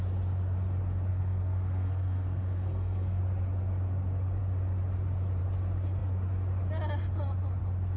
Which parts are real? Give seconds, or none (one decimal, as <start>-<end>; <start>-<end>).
0.0-1.1; 3.2-8.0